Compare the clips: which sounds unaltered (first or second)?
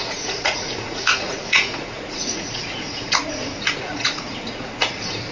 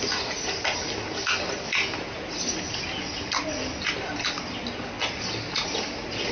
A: second